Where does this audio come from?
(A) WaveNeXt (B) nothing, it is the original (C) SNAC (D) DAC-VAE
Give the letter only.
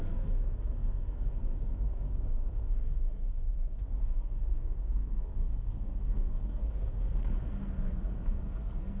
C